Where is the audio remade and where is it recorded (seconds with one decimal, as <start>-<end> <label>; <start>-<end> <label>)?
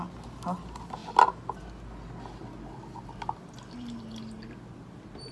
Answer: 0.0-5.3 recorded